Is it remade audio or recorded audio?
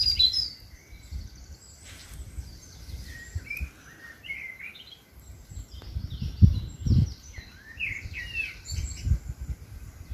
remade